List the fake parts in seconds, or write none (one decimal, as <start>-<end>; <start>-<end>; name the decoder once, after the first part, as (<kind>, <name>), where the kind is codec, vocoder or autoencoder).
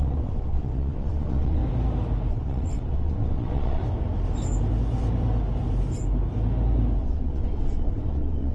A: 0.0-1.6 (vocoder, WaveNeXt); 2.3-3.8; 7.0-8.5